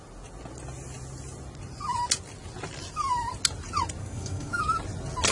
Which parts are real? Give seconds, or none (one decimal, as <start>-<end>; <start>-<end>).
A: 0.0-4.0; 4.6-5.3